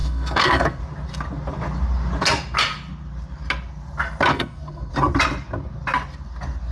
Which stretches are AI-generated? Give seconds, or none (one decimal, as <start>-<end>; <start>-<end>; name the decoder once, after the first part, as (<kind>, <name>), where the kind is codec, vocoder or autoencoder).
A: 0.0-0.8 (codec, SNAC); 4.3-4.9

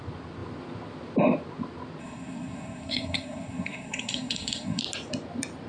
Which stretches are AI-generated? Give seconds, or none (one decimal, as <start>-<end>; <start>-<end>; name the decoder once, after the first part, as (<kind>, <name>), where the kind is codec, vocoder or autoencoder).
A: 2.0-4.8 (codec, SNAC)

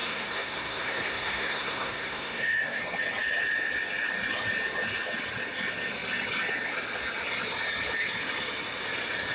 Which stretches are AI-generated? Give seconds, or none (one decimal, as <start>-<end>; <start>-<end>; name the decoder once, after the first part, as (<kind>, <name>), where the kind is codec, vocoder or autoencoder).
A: 0.0-2.8 (codec, SNAC)

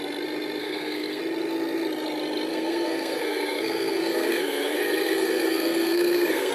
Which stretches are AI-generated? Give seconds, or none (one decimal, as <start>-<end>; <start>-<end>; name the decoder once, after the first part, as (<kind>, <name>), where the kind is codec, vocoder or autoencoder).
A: 0.6-1.2 (codec, SNAC); 2.5-6.5